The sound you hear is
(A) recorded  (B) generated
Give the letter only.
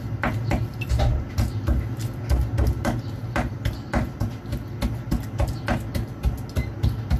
A